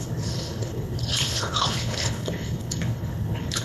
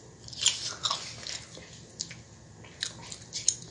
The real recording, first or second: second